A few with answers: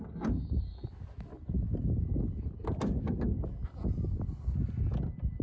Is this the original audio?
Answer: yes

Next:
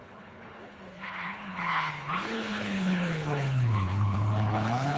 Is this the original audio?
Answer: no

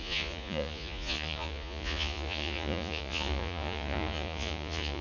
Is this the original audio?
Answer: no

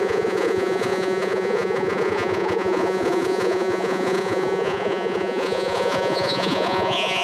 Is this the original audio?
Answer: no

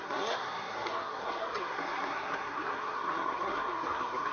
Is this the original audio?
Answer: no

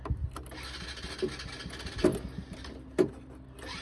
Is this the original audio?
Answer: yes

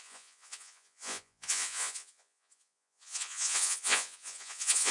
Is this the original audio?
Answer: no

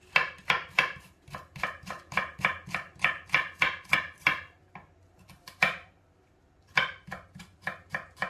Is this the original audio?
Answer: yes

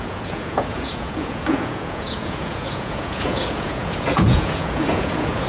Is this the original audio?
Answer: no